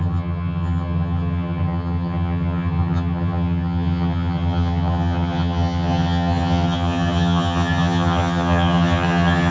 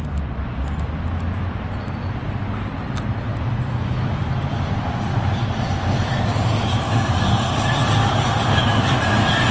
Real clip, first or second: second